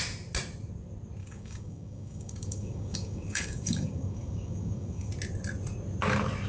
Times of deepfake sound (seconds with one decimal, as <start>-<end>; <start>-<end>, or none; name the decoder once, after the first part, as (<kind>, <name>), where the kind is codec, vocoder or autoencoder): 1.2-5.1 (codec, DAC)